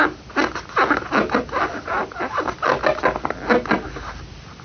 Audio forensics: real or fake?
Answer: real